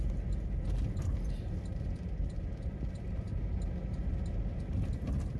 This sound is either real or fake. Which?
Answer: real